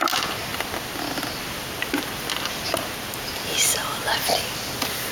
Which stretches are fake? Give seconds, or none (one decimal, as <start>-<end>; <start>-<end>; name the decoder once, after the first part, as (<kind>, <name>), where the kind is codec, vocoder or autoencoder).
none